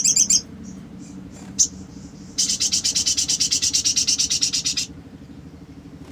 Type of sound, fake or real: fake